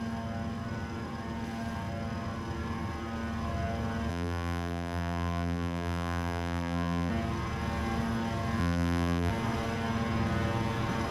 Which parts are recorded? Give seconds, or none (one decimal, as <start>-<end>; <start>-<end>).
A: 0.0-4.1; 7.1-8.6; 9.3-11.1